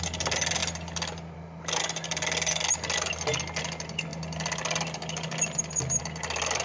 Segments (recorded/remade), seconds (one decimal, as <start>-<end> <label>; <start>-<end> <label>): 0.0-6.6 recorded